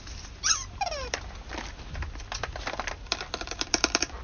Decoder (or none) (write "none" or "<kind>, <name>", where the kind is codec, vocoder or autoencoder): vocoder, BigVGAN v2